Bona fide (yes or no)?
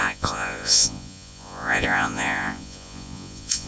no